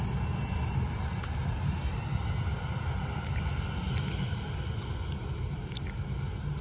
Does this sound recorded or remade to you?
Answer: recorded